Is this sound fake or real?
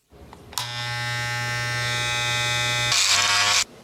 real